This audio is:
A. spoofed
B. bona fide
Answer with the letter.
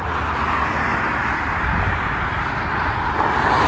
B